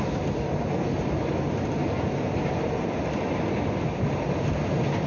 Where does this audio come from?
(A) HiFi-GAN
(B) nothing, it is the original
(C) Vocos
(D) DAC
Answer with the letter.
B